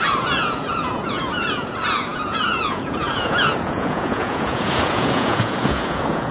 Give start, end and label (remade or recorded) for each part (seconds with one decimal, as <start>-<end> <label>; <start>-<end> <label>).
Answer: 0.0-6.3 remade